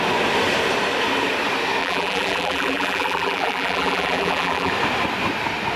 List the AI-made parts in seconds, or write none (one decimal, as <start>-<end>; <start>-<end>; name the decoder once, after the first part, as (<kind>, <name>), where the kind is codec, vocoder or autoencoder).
1.8-4.7 (vocoder, BigVGAN v2)